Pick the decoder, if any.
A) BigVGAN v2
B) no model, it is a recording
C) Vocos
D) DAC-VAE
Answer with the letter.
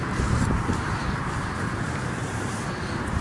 A